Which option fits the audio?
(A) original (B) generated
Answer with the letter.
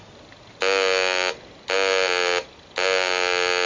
A